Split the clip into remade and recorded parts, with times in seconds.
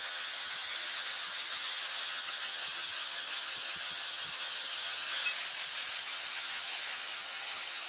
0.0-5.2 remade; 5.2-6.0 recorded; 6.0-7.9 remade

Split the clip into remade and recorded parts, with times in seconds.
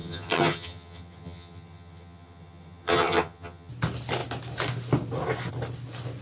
0.0-3.7 remade; 3.7-6.2 recorded